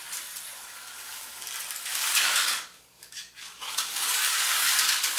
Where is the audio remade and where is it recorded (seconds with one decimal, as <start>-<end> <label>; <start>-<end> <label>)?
0.0-0.6 recorded; 0.6-1.5 remade; 1.5-1.9 recorded; 1.9-5.2 remade